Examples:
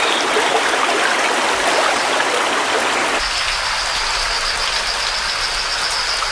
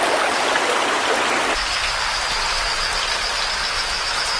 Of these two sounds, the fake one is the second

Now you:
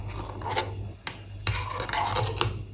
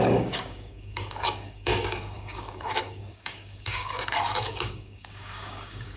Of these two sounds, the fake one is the second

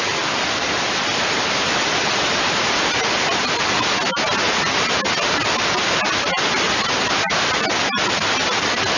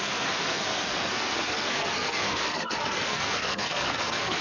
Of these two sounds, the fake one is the second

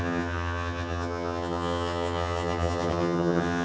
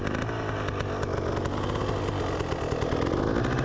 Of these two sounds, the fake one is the first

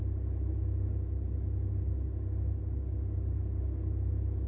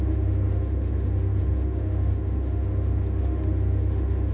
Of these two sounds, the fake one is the second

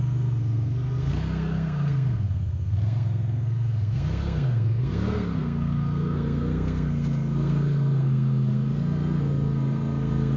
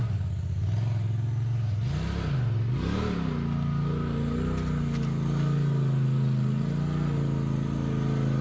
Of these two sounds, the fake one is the first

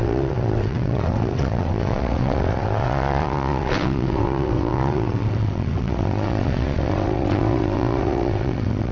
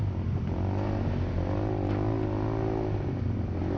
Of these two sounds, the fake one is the first